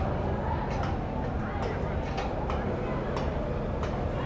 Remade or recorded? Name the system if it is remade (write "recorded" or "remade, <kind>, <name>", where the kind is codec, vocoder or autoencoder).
recorded